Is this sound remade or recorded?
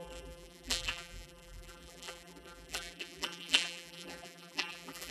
remade